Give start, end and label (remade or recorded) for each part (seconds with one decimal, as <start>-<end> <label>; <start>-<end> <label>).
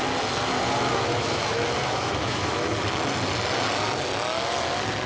0.0-0.9 recorded; 0.9-2.7 remade; 2.7-5.1 recorded